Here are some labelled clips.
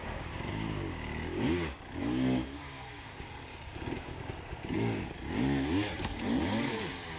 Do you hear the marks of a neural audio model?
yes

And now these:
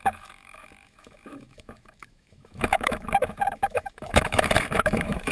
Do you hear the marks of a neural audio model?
yes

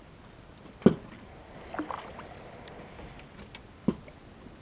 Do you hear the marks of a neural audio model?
no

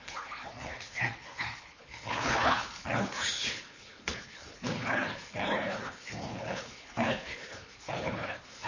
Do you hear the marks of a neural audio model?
yes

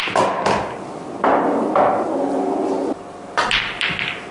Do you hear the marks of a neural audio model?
no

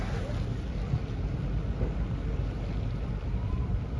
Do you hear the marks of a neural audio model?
no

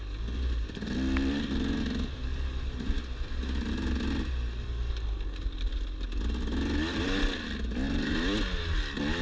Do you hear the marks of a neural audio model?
no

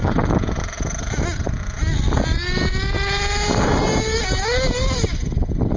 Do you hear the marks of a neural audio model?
no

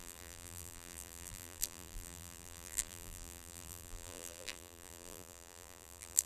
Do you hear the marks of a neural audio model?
yes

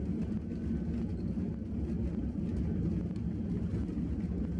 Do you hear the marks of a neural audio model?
no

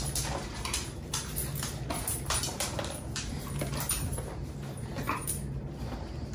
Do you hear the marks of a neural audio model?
yes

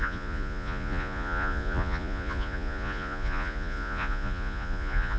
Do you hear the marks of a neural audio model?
yes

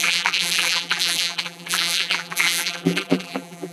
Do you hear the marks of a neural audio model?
yes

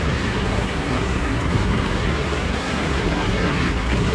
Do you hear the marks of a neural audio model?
yes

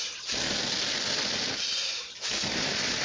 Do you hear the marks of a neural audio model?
no